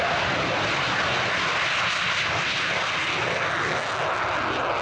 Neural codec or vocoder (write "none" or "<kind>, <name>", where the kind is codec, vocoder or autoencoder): none